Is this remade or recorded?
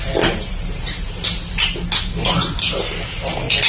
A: recorded